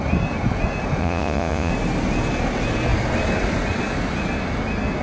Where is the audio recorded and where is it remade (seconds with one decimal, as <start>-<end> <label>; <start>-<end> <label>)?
0.0-1.0 recorded; 1.0-1.7 remade; 1.7-5.0 recorded